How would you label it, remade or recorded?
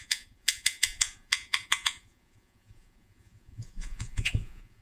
remade